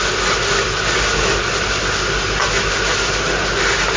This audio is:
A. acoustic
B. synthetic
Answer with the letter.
A